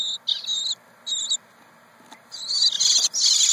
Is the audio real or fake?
real